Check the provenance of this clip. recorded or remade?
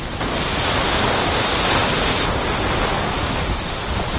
recorded